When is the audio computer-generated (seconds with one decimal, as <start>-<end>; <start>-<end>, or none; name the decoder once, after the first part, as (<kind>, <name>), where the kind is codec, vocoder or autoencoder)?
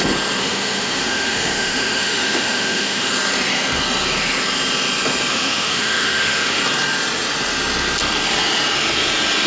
0.4-3.1 (autoencoder, DAC-VAE); 5.3-6.6